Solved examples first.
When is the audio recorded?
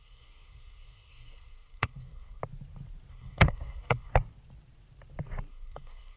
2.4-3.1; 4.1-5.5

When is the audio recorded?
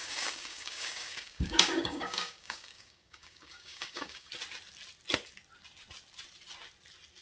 4.3-7.2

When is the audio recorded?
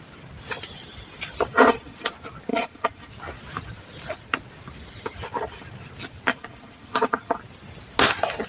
0.0-1.5; 2.1-2.5; 3.1-6.3; 7.4-8.5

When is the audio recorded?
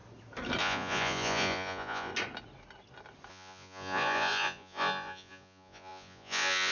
0.0-0.6; 2.1-3.3